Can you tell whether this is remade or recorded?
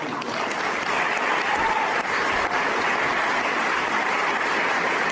recorded